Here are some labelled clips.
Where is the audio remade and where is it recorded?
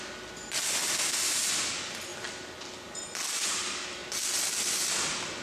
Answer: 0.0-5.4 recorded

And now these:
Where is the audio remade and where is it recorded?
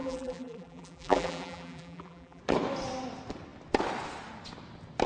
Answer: 0.0-2.4 remade; 2.4-5.1 recorded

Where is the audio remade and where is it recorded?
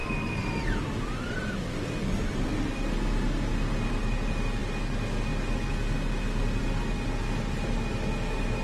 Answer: 0.0-8.6 recorded